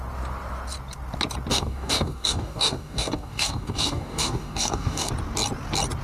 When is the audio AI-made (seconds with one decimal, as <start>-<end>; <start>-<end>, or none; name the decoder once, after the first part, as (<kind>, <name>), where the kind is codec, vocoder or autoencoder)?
1.5-5.1 (codec, DAC)